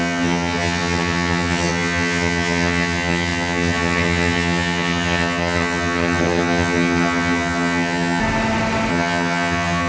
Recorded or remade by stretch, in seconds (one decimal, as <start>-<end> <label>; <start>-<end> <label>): 0.0-8.2 remade; 8.2-8.9 recorded; 8.9-9.9 remade